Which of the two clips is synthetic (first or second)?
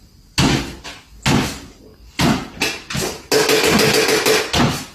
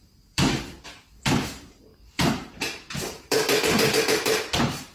second